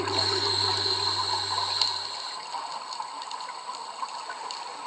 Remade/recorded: recorded